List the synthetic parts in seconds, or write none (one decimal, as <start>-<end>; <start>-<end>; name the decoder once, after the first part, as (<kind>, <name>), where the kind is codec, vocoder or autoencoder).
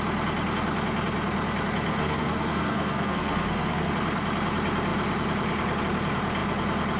1.9-3.9 (codec, SNAC)